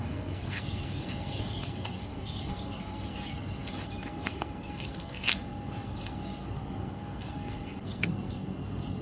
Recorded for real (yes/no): no